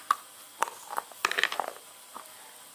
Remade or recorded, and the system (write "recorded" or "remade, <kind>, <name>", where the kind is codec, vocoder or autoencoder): remade, vocoder, BigVGAN v2